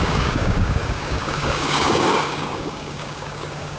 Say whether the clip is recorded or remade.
remade